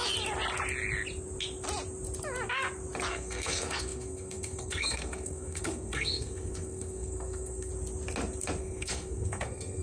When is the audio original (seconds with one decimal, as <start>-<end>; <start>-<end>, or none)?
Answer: 0.0-3.1; 7.7-8.6